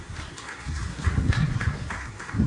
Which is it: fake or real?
fake